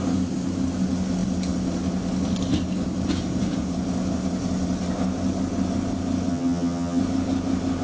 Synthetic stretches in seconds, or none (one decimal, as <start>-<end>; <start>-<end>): 6.3-7.0